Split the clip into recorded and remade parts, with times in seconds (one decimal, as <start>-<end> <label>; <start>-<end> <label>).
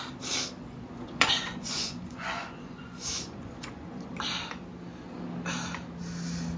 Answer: 0.0-0.6 recorded; 0.6-4.1 remade; 4.1-6.6 recorded